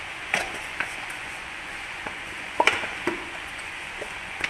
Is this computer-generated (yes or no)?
yes